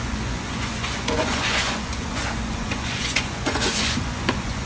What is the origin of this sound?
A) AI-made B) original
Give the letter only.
A